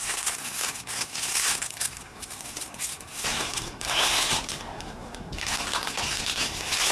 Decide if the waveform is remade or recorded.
remade